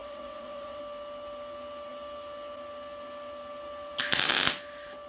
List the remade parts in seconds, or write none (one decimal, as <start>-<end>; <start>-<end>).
0.0-0.8